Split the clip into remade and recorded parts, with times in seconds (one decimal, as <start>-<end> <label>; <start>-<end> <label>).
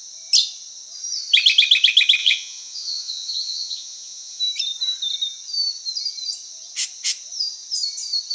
0.0-2.2 recorded; 2.2-4.4 remade; 4.4-8.3 recorded